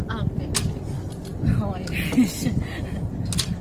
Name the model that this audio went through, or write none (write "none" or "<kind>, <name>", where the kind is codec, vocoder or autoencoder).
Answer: none